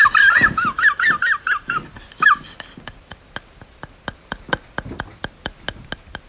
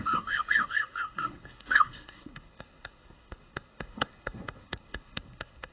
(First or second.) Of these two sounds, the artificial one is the second